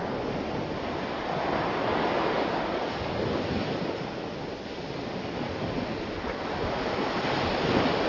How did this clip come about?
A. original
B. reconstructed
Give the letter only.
A